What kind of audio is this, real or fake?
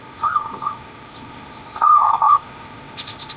fake